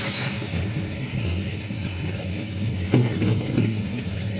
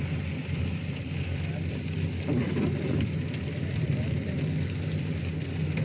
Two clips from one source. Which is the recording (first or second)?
second